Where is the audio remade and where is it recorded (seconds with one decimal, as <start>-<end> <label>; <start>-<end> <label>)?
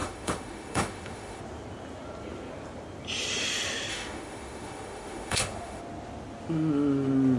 0.0-1.4 remade; 1.4-3.9 recorded; 3.9-5.8 remade; 5.8-7.4 recorded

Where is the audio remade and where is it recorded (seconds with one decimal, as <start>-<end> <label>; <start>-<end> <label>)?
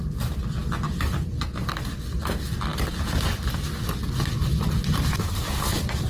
0.0-6.1 recorded